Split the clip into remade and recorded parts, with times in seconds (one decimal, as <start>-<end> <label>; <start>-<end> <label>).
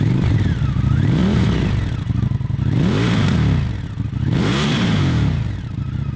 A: 0.0-1.2 remade; 1.2-4.4 recorded; 4.4-6.2 remade